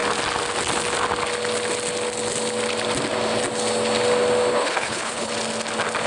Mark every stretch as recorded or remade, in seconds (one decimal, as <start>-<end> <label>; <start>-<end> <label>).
0.0-4.5 recorded; 4.5-5.3 remade; 5.3-6.1 recorded